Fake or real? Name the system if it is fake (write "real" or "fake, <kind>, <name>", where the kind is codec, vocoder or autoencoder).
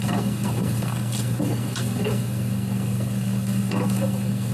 fake, codec, SNAC